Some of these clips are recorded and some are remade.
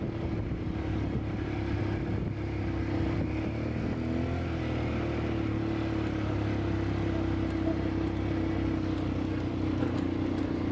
recorded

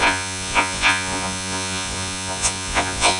remade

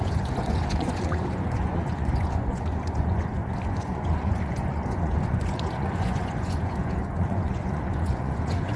remade